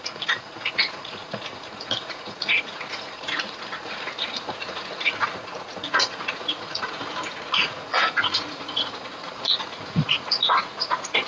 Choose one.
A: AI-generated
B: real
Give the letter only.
A